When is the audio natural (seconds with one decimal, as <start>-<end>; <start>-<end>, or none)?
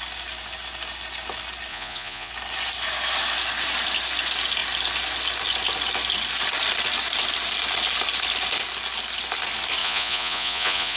0.0-1.7; 2.3-9.8